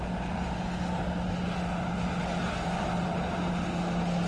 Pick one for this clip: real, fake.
real